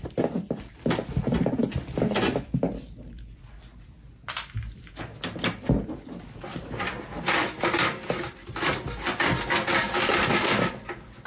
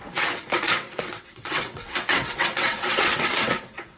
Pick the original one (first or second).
first